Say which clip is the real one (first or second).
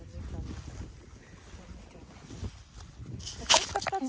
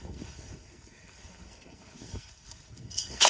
first